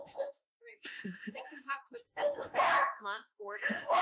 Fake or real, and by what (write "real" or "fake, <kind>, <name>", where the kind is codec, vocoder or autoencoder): fake, autoencoder, DAC-VAE